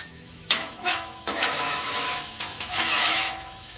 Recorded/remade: remade